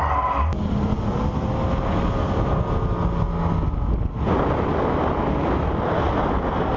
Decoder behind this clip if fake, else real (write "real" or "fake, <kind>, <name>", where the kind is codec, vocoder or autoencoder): real